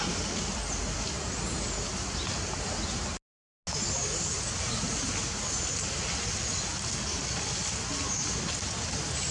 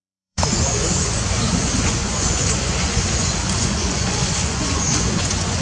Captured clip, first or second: first